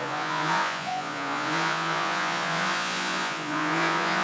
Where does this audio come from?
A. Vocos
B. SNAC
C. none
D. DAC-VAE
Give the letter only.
A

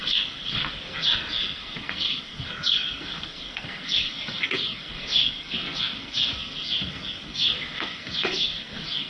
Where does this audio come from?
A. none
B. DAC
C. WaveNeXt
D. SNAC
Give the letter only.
D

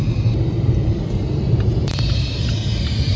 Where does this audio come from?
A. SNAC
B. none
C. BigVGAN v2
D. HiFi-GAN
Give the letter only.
C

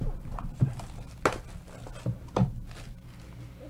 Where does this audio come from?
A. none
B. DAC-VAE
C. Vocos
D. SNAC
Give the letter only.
A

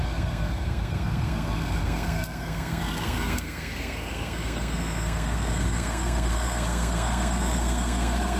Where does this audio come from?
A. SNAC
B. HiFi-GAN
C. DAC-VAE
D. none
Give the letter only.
A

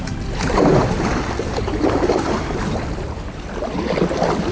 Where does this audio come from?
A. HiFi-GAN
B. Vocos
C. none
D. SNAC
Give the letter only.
C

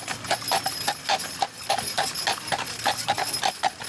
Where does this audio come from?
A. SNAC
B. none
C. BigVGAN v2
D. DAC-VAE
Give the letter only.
B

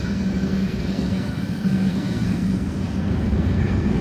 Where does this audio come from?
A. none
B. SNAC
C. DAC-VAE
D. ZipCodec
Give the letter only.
B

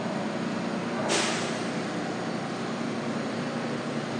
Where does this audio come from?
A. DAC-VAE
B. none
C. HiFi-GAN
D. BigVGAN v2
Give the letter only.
B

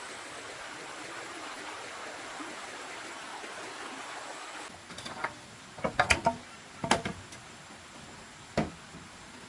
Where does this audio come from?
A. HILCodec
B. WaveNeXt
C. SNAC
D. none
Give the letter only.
D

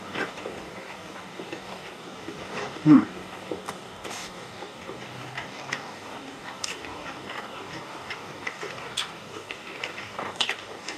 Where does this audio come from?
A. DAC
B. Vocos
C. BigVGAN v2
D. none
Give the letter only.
A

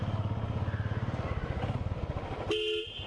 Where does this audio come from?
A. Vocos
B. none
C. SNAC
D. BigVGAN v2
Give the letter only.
B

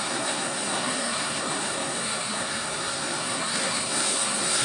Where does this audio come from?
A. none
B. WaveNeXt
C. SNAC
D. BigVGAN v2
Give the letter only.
C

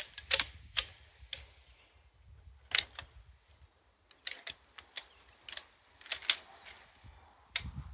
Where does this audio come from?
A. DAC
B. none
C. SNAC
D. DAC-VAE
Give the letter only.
B